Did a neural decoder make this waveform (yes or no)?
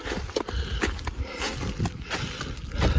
no